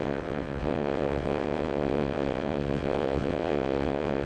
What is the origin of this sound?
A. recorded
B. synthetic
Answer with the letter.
B